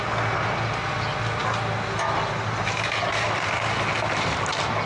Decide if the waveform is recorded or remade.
recorded